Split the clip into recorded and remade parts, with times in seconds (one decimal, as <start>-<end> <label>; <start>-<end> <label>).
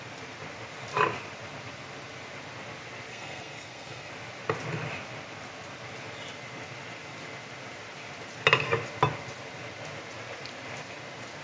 0.0-3.1 recorded; 3.1-4.1 remade; 4.1-11.4 recorded